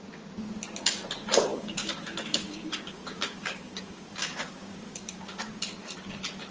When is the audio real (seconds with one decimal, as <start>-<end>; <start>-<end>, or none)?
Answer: 0.0-1.5; 5.4-6.5